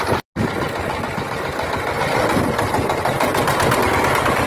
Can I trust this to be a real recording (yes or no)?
yes